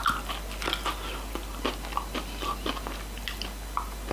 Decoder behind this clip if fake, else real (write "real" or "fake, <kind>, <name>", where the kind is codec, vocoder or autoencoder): real